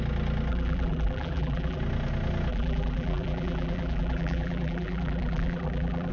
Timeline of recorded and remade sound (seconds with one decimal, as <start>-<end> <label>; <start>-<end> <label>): 0.0-0.5 recorded; 0.5-1.8 remade; 1.8-2.5 recorded; 2.5-6.1 remade